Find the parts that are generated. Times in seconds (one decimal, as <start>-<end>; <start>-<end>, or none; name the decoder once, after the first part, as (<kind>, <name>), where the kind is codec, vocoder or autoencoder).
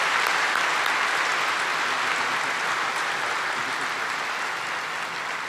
none